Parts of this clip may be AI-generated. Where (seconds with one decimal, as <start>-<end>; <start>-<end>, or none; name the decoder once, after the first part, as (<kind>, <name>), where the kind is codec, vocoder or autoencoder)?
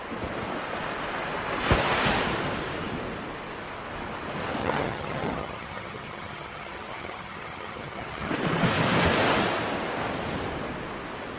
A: 4.6-8.3 (vocoder, HiFi-GAN)